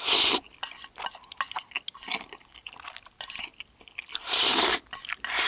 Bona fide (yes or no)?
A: yes